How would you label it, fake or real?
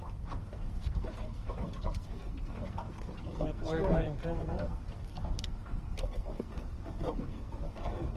fake